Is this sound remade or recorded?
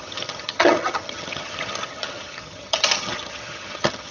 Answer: remade